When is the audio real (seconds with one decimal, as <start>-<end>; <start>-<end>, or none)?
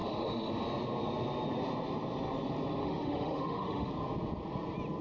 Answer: 0.5-2.8; 3.9-5.0